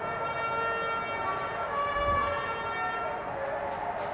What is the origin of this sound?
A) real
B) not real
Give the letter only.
A